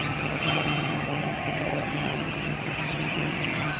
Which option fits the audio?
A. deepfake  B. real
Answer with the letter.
A